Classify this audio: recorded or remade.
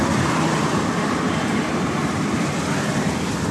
remade